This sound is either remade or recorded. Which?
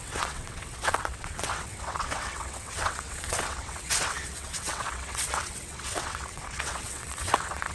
remade